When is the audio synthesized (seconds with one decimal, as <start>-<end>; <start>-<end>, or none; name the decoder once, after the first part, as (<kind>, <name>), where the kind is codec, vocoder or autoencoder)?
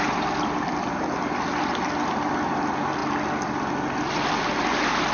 none